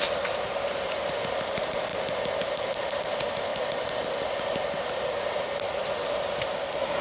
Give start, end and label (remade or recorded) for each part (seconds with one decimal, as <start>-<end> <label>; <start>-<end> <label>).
0.0-7.0 recorded